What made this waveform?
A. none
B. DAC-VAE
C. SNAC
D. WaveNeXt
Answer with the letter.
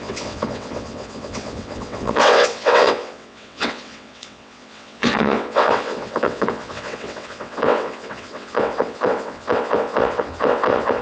D